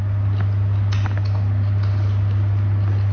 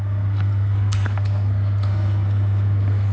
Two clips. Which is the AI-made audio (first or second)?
second